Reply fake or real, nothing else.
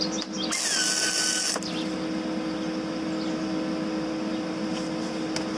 real